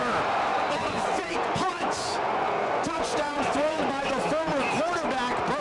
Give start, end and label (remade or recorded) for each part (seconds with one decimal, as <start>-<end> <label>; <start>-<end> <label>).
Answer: 0.0-0.5 recorded; 0.5-3.9 remade; 3.9-5.6 recorded